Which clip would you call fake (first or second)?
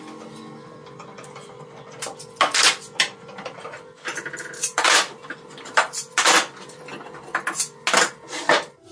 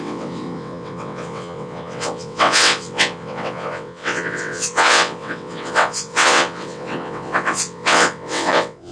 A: second